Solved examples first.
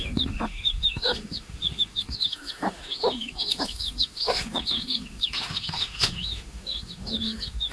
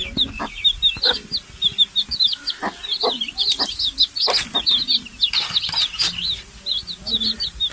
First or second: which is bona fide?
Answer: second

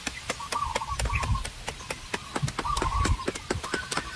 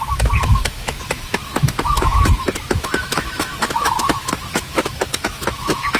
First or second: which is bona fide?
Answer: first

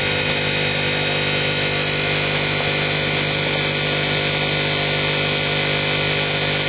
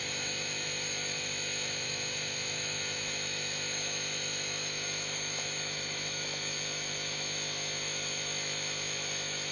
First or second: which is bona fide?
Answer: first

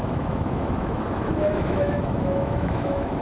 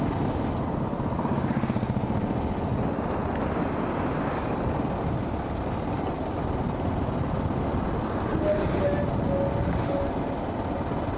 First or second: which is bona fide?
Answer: second